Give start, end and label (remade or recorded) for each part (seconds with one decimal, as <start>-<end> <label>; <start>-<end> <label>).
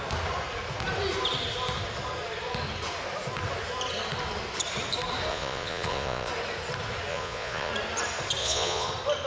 0.0-5.3 recorded; 5.3-6.3 remade; 6.3-7.1 recorded; 7.1-7.7 remade; 7.7-8.4 recorded; 8.4-8.9 remade; 8.9-9.3 recorded